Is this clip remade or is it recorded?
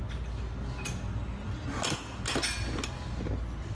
recorded